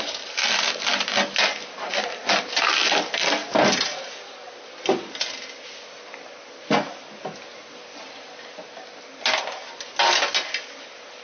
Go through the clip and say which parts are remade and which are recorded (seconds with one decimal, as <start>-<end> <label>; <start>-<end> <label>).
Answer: 0.0-11.2 recorded